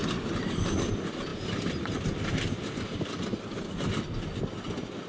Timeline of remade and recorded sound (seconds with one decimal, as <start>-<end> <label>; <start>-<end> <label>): 0.0-5.1 recorded